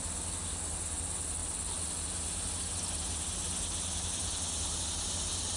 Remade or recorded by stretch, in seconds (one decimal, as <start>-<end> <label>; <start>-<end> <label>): 0.0-5.6 recorded